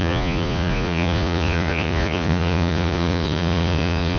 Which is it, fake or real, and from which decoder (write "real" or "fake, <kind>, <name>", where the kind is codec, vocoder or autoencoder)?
fake, vocoder, Vocos